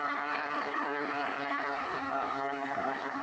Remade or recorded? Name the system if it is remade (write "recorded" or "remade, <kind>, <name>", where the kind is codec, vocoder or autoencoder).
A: remade, codec, SNAC